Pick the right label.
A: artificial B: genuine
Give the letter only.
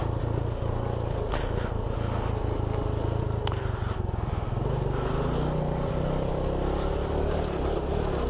B